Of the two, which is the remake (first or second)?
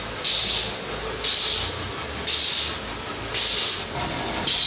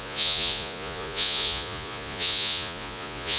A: second